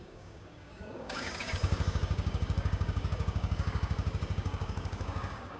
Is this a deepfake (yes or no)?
yes